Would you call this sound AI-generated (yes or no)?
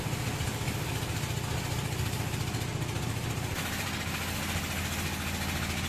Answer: no